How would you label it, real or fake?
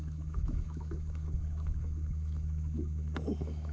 fake